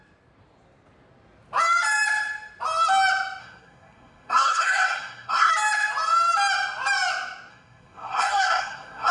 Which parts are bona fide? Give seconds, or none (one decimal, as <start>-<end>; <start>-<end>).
0.0-3.4; 5.5-7.5